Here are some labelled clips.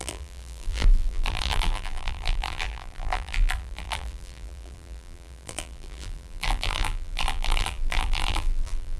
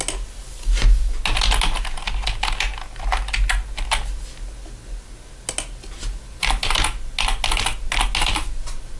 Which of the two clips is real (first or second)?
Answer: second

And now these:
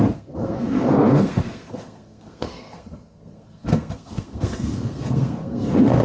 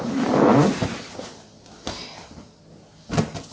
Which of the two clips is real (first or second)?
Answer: second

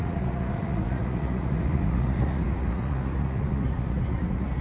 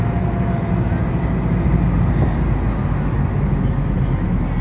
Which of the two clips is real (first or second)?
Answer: second